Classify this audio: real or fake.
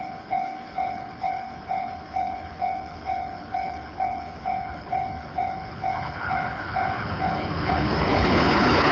fake